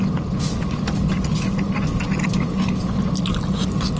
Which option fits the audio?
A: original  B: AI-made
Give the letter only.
A